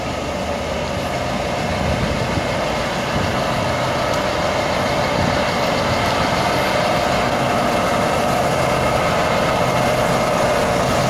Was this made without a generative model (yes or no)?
yes